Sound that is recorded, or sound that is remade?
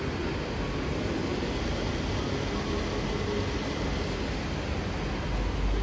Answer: recorded